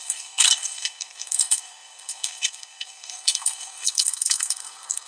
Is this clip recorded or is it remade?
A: remade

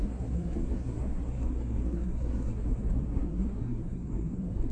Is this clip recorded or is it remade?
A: remade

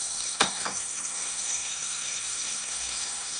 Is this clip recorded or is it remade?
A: remade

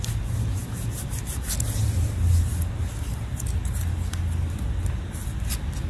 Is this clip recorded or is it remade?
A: recorded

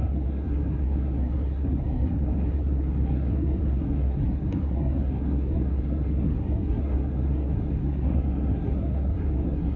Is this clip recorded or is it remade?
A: remade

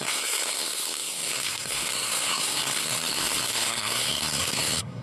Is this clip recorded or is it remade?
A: remade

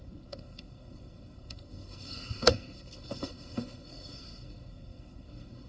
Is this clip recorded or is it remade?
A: remade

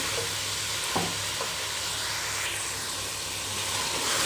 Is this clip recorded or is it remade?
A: recorded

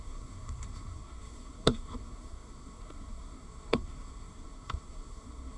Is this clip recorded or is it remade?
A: remade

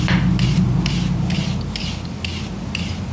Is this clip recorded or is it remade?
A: recorded